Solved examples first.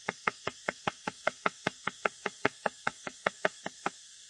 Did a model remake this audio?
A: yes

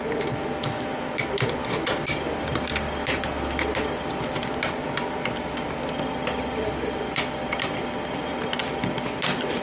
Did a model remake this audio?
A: no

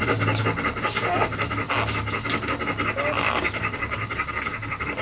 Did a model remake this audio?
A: no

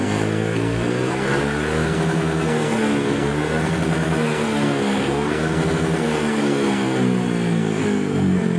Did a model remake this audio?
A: yes